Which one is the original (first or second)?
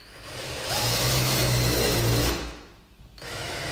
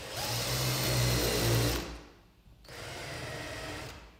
second